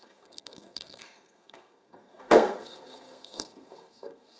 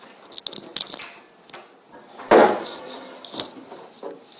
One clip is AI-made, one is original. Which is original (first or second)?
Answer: second